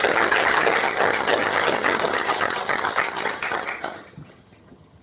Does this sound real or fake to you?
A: fake